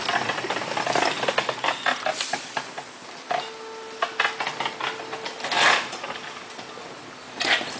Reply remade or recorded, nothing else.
recorded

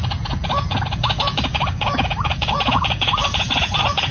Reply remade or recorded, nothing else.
remade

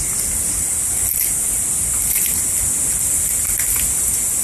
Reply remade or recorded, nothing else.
recorded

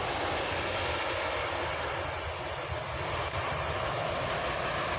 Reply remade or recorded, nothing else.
recorded